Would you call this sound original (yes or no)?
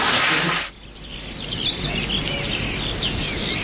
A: yes